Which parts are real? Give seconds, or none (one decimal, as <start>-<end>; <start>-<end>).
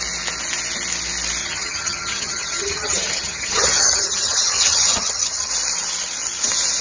0.0-1.4; 5.5-6.8